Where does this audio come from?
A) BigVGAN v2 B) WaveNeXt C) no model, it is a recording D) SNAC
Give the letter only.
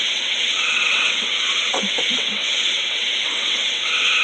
B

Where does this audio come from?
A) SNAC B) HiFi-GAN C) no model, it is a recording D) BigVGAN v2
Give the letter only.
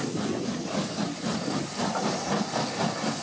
C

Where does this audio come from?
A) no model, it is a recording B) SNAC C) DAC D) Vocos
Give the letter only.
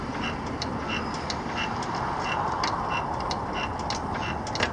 A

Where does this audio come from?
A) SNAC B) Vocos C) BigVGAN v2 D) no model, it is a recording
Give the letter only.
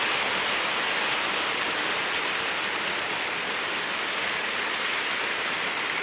D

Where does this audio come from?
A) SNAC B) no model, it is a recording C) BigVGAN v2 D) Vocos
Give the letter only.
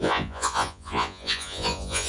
D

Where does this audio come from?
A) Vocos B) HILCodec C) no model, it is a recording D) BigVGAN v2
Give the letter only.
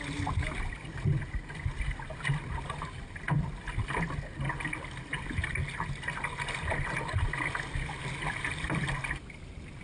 C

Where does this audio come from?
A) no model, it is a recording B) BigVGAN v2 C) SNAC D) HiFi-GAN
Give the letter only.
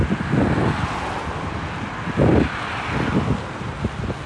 A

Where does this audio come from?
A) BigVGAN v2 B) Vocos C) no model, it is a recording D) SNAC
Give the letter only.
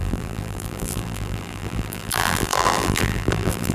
A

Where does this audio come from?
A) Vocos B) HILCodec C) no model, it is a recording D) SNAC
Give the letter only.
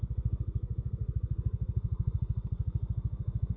D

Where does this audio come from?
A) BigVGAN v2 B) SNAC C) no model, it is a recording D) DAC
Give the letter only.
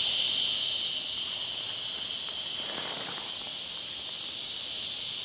C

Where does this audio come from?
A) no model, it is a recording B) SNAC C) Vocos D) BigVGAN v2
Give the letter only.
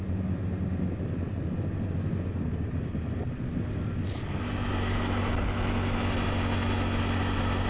A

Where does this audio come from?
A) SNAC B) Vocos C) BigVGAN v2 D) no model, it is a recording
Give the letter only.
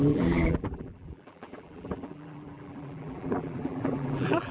C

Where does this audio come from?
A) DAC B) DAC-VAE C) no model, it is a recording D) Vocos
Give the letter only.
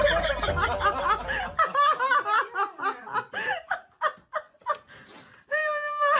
C